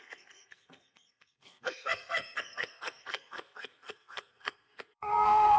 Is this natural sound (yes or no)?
no